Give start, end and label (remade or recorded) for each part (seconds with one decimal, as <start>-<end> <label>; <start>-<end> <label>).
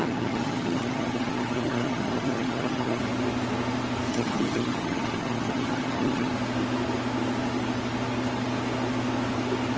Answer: 0.0-3.0 remade; 3.0-4.1 recorded; 4.1-6.3 remade; 6.3-9.8 recorded